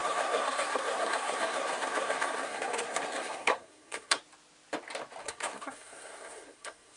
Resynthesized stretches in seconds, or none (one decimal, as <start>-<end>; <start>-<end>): 0.0-4.2; 5.2-7.0